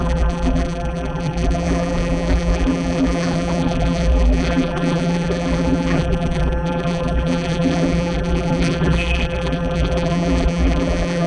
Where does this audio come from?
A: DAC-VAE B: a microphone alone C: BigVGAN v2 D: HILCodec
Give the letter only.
C